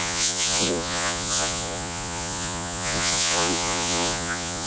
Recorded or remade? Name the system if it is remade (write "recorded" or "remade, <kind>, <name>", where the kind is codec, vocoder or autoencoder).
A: remade, vocoder, Vocos